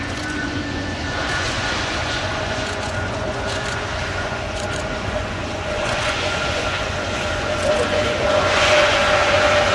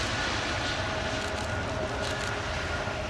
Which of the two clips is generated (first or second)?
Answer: first